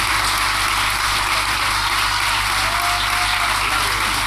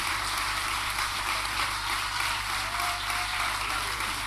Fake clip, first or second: second